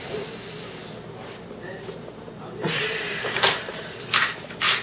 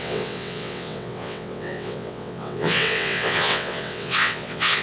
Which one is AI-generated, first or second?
second